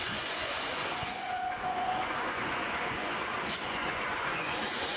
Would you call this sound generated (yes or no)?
yes